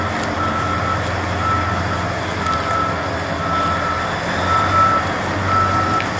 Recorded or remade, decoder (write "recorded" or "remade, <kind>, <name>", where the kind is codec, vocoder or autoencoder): recorded